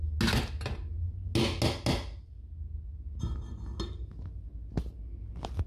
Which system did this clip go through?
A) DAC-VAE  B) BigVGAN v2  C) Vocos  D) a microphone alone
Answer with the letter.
D